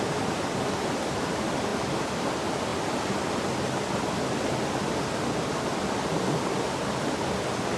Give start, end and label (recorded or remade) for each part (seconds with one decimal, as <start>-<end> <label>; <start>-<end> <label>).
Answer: 0.0-7.8 recorded